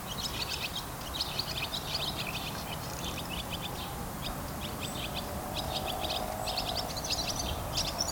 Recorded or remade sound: recorded